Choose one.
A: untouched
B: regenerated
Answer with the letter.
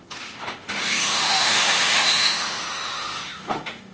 B